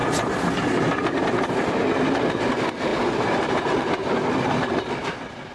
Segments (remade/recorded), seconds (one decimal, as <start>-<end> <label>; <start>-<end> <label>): 0.0-2.9 recorded; 2.9-3.9 remade; 3.9-5.5 recorded